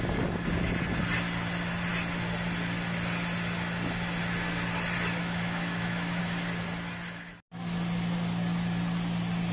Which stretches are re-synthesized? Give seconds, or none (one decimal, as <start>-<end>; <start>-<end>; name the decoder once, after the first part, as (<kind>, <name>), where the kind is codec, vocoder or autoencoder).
5.2-6.2 (autoencoder, DAC-VAE)